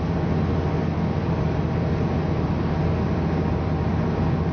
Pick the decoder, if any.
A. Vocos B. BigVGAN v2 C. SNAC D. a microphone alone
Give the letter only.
D